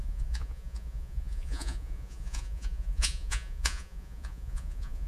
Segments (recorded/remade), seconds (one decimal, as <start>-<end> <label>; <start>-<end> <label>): 0.0-5.1 remade